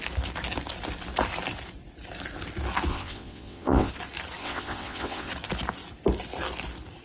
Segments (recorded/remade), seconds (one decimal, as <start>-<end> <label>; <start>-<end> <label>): 0.0-2.9 recorded; 2.9-3.9 remade; 3.9-4.4 recorded; 4.4-5.3 remade; 5.3-7.0 recorded